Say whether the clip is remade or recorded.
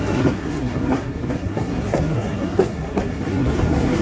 remade